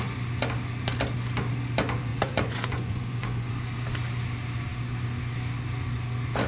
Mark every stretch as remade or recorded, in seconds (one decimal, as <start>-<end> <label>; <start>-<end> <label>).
0.0-2.1 recorded; 2.1-3.5 remade; 3.5-6.5 recorded